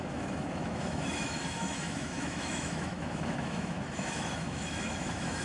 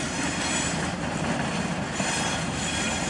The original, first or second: second